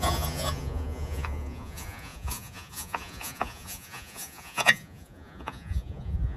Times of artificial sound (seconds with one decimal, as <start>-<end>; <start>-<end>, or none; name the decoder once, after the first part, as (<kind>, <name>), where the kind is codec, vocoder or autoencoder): 0.0-6.4 (vocoder, Vocos)